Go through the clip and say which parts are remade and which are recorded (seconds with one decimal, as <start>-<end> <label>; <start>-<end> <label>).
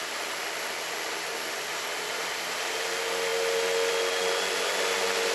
0.0-5.3 recorded